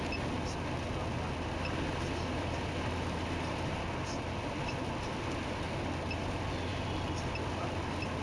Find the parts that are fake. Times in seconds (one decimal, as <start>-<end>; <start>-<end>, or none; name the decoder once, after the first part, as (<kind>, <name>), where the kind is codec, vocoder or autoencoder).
none